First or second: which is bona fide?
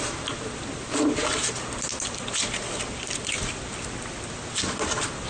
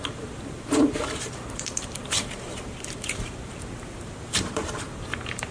first